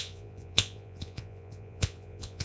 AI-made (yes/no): yes